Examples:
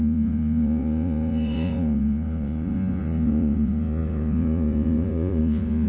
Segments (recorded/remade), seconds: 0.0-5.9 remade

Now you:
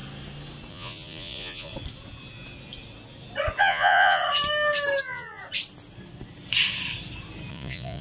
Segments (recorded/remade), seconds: 0.0-0.7 recorded; 0.7-1.7 remade; 1.7-3.6 recorded; 3.6-4.2 remade; 4.2-5.0 recorded; 5.0-5.4 remade; 5.4-7.5 recorded; 7.5-8.0 remade

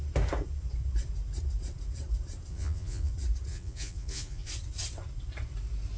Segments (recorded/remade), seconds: 0.0-2.5 recorded; 2.5-3.1 remade; 3.1-3.5 recorded; 3.5-4.5 remade; 4.5-6.0 recorded